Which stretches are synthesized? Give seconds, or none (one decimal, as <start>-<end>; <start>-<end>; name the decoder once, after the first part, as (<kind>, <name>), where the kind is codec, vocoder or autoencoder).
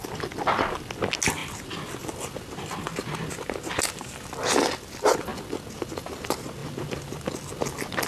none